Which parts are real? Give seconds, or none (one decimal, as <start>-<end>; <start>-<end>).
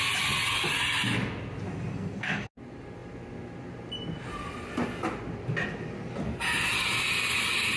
0.0-1.9; 2.5-7.8